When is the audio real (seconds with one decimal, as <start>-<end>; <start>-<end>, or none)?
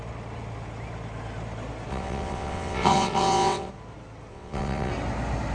0.0-1.9; 3.7-4.3; 4.9-5.5